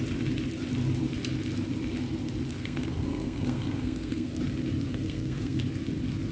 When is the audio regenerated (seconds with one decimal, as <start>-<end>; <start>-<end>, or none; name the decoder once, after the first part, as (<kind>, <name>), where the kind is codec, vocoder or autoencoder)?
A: 2.5-4.4 (codec, SNAC); 4.9-5.6